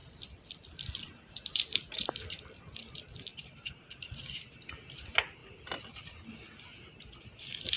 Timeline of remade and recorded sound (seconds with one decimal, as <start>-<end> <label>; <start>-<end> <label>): 0.0-4.7 remade; 4.7-5.4 recorded; 5.4-6.0 remade; 6.0-7.8 recorded

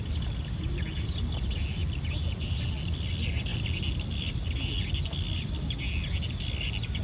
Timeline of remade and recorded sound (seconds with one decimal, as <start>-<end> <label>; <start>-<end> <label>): 0.0-7.0 recorded

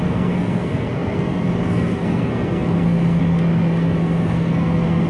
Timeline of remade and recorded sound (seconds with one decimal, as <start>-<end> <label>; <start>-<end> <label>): 0.0-5.1 remade